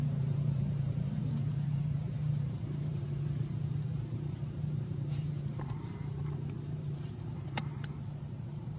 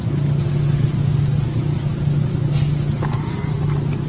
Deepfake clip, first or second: first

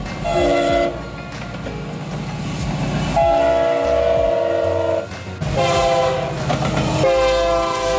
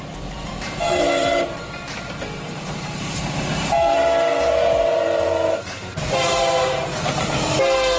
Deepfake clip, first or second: second